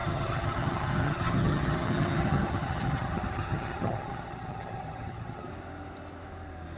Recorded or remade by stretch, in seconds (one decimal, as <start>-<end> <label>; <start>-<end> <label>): 0.0-5.5 remade; 5.5-6.8 recorded

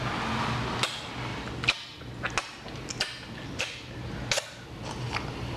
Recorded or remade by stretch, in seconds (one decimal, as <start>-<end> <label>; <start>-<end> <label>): 0.0-5.6 recorded

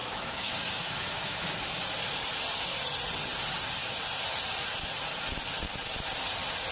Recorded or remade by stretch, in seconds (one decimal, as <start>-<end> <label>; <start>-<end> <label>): 0.0-1.8 remade; 1.8-6.7 recorded

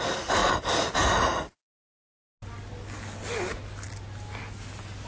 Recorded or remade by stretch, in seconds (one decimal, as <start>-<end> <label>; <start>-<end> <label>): 0.0-5.1 recorded

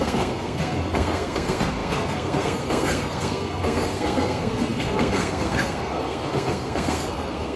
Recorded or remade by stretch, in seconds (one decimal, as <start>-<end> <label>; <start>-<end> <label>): 0.0-7.6 remade

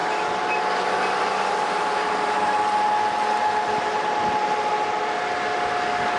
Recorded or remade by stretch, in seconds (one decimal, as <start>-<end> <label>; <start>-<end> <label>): 0.0-6.2 recorded